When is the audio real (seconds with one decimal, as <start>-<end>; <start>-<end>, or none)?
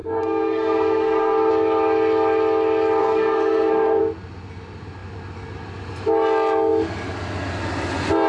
1.5-3.0; 4.0-8.3